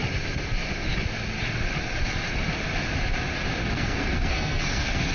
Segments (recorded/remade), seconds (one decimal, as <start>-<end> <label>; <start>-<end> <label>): 0.0-3.6 recorded; 3.6-5.1 remade